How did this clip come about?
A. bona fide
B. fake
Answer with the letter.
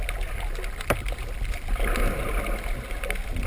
A